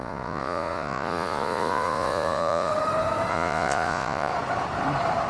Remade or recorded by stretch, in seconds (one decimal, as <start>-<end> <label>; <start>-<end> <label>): 0.0-2.7 remade; 2.7-3.3 recorded; 3.3-4.3 remade; 4.3-5.3 recorded